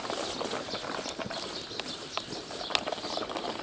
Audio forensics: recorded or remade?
recorded